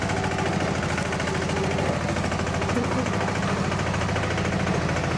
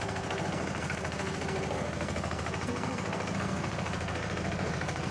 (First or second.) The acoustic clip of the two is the first